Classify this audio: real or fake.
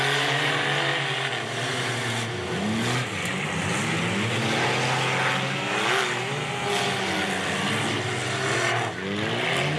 real